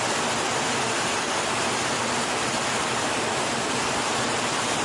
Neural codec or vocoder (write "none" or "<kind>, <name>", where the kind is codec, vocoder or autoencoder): none